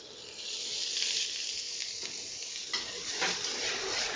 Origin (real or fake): fake